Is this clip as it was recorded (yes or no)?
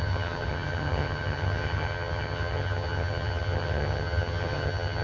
no